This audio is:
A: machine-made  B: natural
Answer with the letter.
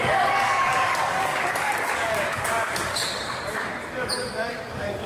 A